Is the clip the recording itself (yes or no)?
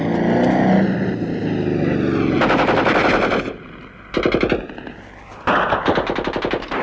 yes